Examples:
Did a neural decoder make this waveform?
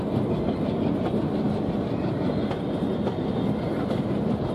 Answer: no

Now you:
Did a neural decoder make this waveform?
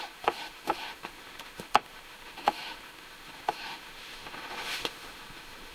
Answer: yes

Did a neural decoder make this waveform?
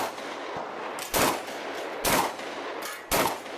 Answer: no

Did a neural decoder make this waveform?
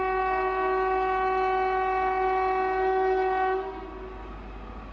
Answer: no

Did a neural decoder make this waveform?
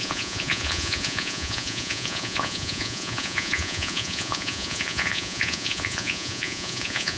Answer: yes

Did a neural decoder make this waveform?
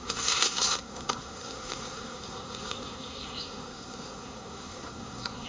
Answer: yes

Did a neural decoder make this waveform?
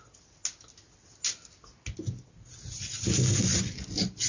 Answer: no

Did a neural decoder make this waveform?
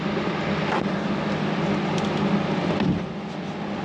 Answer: no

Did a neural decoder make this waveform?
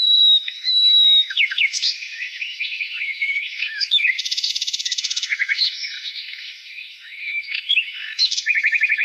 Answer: yes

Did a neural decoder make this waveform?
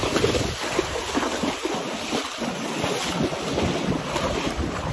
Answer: no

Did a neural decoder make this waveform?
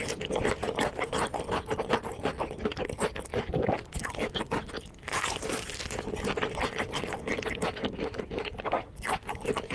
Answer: no